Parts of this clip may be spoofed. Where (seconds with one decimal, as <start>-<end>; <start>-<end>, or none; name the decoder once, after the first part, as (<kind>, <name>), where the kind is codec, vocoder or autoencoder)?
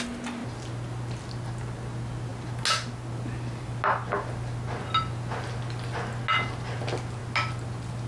none